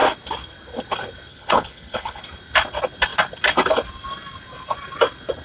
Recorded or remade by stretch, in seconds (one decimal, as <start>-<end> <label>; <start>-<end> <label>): 0.0-1.3 recorded; 1.3-2.2 remade; 2.2-5.4 recorded